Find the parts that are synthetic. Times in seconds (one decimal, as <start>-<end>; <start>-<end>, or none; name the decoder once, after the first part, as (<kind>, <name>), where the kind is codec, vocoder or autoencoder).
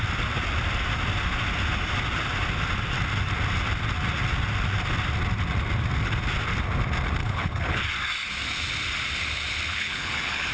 7.2-7.8 (codec, HILCodec); 9.7-10.5